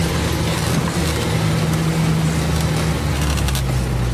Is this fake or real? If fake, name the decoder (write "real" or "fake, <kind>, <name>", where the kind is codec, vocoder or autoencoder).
real